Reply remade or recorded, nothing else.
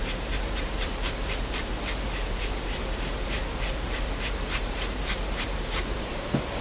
remade